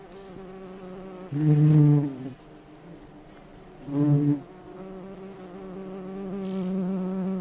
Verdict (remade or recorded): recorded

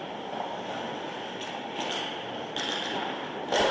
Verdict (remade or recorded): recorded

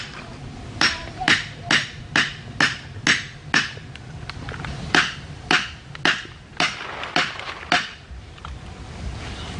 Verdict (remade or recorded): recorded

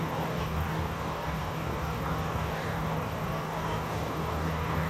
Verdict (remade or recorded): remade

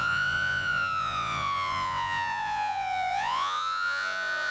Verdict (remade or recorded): remade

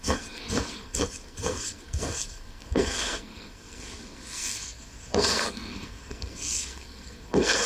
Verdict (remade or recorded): remade